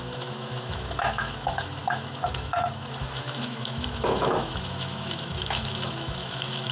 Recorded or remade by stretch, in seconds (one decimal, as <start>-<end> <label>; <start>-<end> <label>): 0.0-6.7 remade